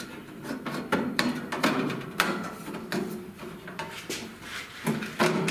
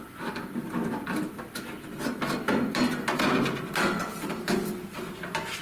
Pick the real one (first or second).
second